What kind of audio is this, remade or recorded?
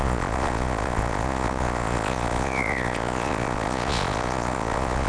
remade